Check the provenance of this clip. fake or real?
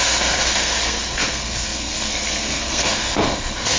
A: fake